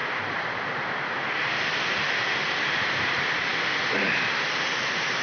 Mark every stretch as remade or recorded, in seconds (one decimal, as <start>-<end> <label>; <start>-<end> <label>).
0.0-5.2 recorded